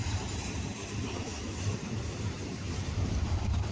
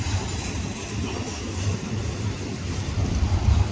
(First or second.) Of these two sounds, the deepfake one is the first